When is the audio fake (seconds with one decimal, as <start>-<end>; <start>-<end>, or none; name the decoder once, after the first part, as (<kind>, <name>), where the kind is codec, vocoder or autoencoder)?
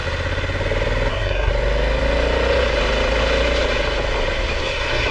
1.1-1.5 (codec, SNAC); 4.6-5.1